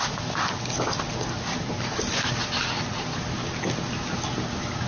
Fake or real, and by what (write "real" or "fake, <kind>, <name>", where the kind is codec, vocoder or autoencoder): real